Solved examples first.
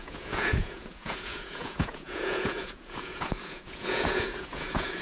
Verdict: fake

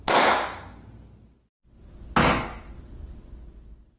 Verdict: real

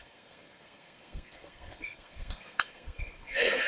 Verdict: fake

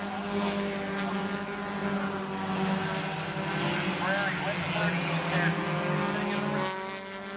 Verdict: real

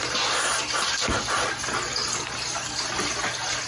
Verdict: real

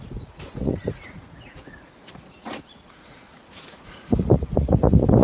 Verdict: fake